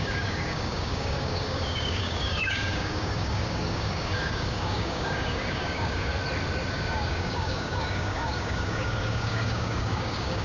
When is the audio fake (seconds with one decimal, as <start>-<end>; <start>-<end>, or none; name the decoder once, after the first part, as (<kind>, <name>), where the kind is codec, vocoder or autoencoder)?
0.0-6.1 (codec, DAC); 6.7-10.4